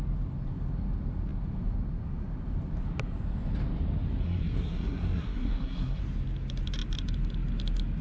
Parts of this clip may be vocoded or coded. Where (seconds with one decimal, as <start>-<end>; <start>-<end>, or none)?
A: 4.2-6.0